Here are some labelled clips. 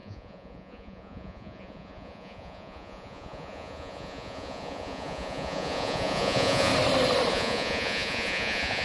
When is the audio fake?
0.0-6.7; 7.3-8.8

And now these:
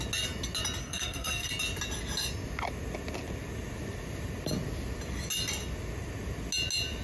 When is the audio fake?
0.8-1.5

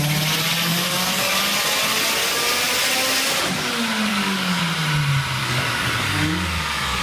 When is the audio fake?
0.7-1.4; 4.1-4.6; 5.4-7.0

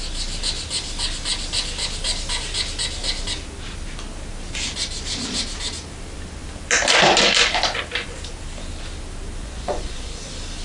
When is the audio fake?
9.4-10.1

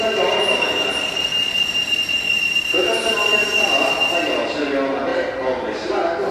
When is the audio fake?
none

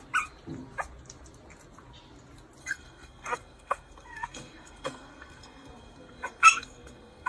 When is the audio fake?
2.6-7.3

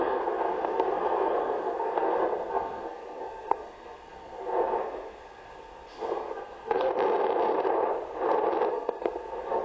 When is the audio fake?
0.0-6.9; 8.7-9.6